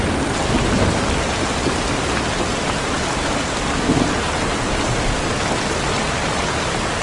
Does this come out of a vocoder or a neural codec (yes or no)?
no